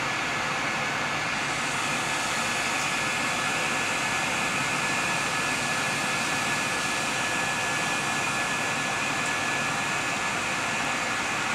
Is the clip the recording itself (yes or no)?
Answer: yes